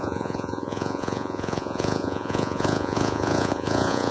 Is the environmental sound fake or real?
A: fake